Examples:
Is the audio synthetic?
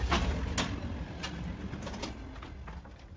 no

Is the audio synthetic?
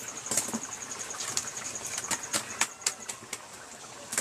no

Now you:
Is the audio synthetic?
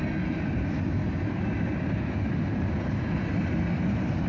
no